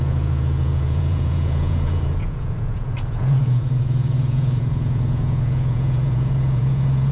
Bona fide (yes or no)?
no